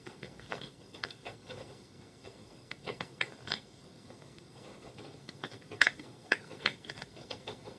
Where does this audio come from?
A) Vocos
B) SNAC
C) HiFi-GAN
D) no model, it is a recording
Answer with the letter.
B